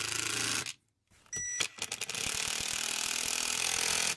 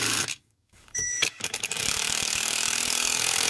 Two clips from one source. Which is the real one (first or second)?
first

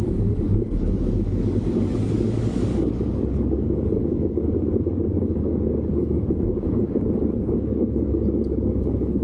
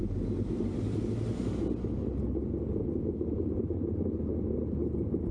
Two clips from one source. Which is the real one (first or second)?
second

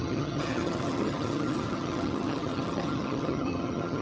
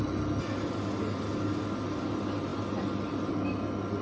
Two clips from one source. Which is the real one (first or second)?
second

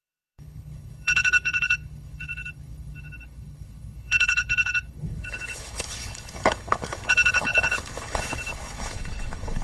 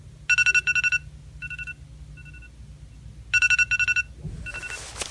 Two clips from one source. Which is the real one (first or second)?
second